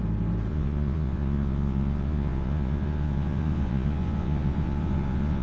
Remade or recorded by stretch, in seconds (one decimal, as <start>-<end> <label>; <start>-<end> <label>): 0.0-0.5 recorded; 0.5-5.4 remade